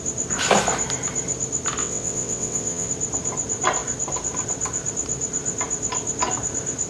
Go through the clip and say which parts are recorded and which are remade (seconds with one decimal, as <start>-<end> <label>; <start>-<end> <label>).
0.0-1.8 recorded; 1.8-2.9 remade; 2.9-6.9 recorded